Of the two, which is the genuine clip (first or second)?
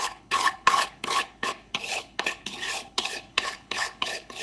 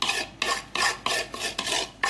second